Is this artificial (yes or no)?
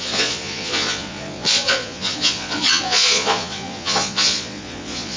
yes